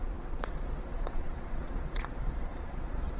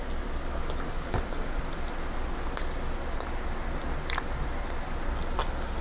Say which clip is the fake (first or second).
first